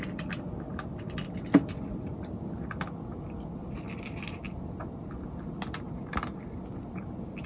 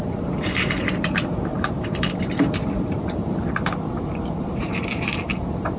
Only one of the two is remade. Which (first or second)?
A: second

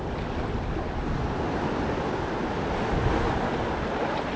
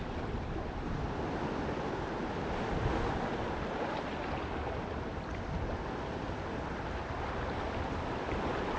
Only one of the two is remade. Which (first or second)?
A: second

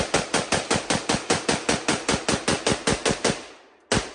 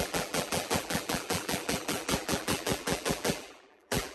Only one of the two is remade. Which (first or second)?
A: second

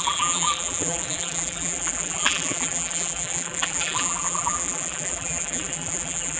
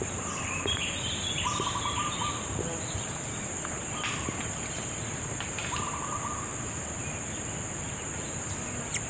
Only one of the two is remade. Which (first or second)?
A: first